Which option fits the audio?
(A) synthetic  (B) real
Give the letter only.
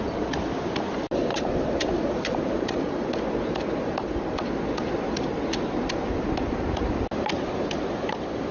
B